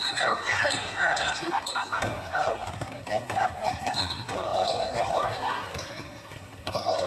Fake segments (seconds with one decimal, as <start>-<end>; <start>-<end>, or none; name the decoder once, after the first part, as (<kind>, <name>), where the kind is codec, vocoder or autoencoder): 0.0-7.1 (codec, SNAC)